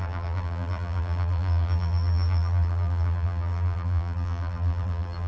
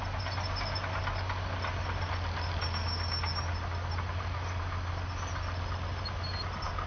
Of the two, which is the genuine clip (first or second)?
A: second